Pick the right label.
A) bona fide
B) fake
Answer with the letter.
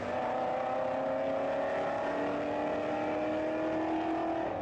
A